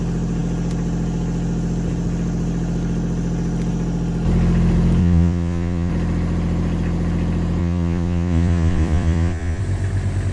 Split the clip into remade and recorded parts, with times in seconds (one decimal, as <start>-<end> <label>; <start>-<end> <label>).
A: 0.0-5.0 recorded; 5.0-5.9 remade; 5.9-7.6 recorded; 7.6-9.6 remade; 9.6-10.3 recorded